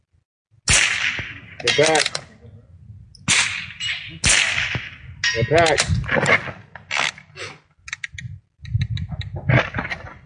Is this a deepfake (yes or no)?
no